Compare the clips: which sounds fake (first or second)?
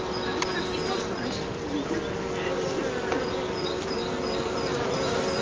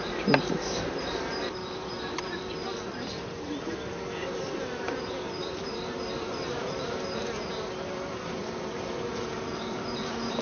second